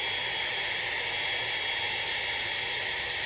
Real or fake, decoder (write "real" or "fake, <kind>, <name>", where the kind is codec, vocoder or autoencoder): real